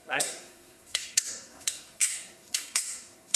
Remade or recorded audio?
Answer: remade